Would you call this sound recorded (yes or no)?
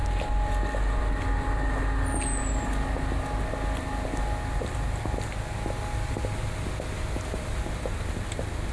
yes